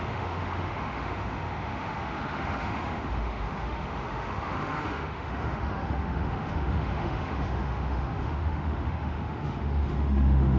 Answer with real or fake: fake